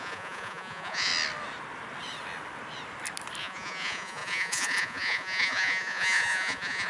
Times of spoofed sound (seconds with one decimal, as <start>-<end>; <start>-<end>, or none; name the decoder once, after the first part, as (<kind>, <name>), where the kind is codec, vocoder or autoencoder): 0.0-1.1 (vocoder, Vocos); 3.4-6.9